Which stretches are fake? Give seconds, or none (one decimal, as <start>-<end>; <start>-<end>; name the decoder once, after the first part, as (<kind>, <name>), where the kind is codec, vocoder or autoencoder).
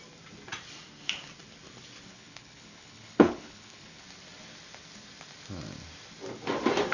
2.1-4.0 (codec, HILCodec)